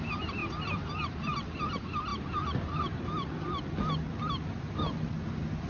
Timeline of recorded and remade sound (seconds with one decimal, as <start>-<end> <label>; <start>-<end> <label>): 0.0-2.1 recorded; 2.1-3.8 remade; 3.8-5.7 recorded